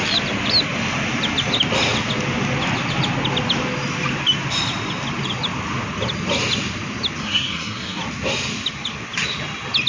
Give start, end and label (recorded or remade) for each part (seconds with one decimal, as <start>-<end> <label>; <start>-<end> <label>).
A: 0.0-7.2 recorded; 7.2-8.0 remade; 8.0-9.9 recorded